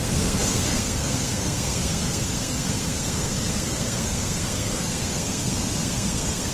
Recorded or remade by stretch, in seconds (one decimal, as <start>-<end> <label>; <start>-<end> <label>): 0.0-6.5 remade